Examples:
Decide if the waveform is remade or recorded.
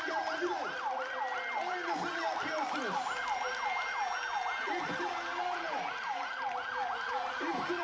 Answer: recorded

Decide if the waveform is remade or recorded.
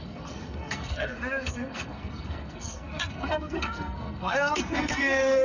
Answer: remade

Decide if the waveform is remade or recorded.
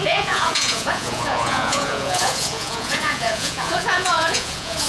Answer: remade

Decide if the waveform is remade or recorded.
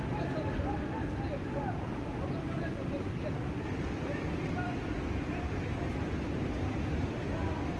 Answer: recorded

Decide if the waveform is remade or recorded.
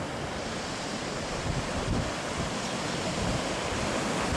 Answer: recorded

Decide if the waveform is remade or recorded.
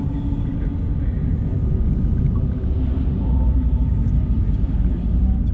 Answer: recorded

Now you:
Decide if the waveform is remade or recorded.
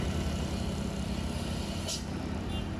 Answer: recorded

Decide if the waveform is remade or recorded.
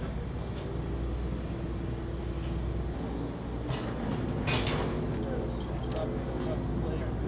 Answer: recorded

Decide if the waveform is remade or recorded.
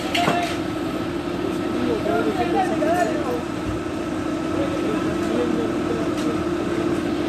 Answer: recorded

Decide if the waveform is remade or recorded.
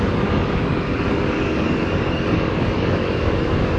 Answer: remade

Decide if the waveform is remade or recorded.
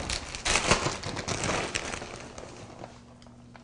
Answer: recorded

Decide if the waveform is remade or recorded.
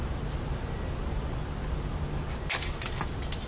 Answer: recorded